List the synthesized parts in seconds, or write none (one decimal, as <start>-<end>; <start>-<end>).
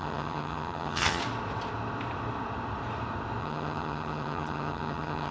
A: 0.0-1.2; 3.4-5.3